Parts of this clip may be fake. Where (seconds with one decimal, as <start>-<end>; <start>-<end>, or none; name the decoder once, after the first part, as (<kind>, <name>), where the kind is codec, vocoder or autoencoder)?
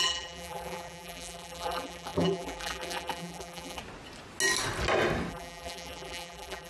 0.0-3.8 (vocoder, BigVGAN v2); 5.3-6.7